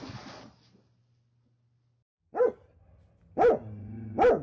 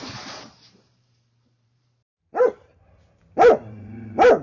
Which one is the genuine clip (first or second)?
first